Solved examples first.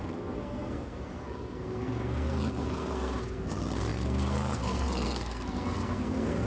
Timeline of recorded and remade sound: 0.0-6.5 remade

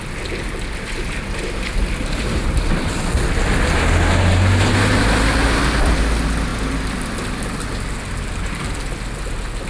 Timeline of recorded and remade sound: 0.0-9.7 recorded

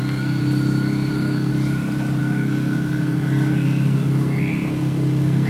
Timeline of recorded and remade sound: 0.0-0.4 remade; 0.4-1.1 recorded; 1.1-1.5 remade; 1.5-2.2 recorded; 2.2-5.5 remade

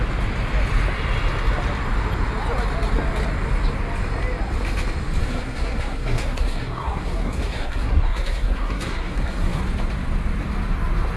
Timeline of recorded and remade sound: 0.0-5.2 recorded; 5.2-9.6 remade; 9.6-11.2 recorded

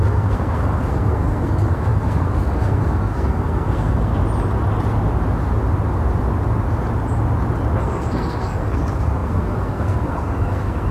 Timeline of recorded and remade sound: 0.0-4.1 remade; 4.1-7.8 recorded; 7.8-10.9 remade

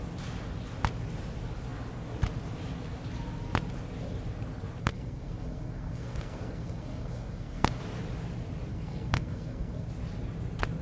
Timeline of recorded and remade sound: 0.0-4.8 recorded; 4.8-7.8 remade; 7.8-8.7 recorded; 8.7-9.9 remade; 9.9-10.8 recorded